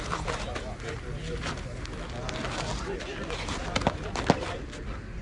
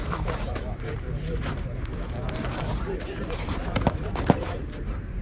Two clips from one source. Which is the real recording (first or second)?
first